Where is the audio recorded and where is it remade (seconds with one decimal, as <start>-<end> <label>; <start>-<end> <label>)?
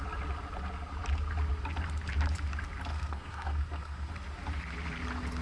0.0-2.9 recorded; 2.9-4.1 remade; 4.1-5.4 recorded